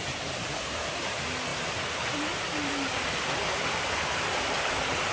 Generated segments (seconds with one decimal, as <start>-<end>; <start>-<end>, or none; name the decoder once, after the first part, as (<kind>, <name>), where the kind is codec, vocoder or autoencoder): 1.5-4.6 (vocoder, BigVGAN v2)